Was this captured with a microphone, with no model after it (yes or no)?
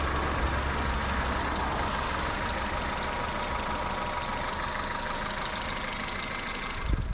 yes